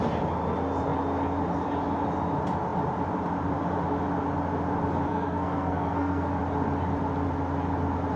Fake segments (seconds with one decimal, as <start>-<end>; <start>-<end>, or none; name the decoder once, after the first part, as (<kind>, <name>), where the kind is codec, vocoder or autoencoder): 5.1-6.4 (codec, SNAC)